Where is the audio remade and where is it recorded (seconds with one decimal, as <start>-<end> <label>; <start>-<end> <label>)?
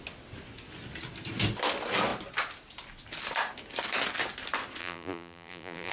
0.0-4.8 recorded; 4.8-5.9 remade